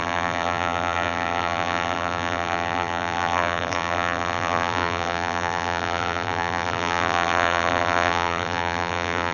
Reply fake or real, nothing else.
fake